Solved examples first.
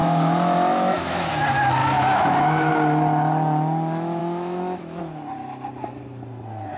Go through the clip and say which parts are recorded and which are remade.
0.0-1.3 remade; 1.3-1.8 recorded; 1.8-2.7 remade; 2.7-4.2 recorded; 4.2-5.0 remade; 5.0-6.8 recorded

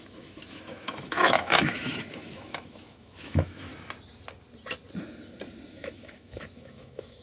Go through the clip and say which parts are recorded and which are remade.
0.0-3.7 remade; 3.7-5.7 recorded; 5.7-7.2 remade

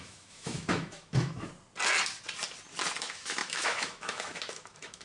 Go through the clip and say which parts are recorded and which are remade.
0.0-1.5 remade; 1.5-3.0 recorded; 3.0-5.0 remade

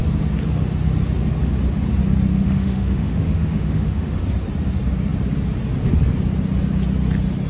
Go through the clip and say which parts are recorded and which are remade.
0.0-2.3 recorded; 2.3-4.2 remade; 4.2-7.5 recorded

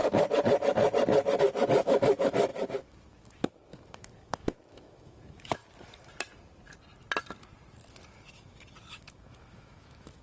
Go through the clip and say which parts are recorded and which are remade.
0.0-1.4 recorded; 1.4-5.6 remade; 5.6-8.9 recorded; 8.9-10.2 remade

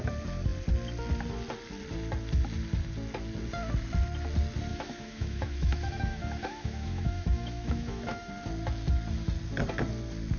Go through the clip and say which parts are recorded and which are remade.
0.0-4.7 recorded; 4.7-8.3 remade; 8.3-10.4 recorded